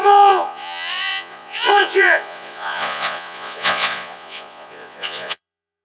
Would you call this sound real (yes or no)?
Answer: no